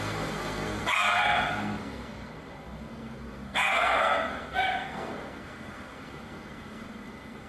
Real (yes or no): no